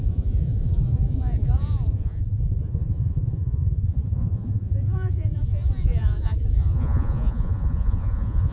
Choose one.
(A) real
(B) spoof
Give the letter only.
B